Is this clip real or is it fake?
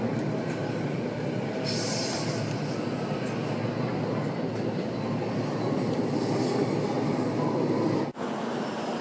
real